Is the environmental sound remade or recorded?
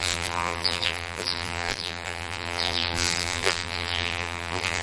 remade